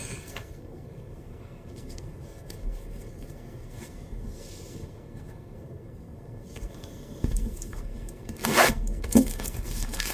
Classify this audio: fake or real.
fake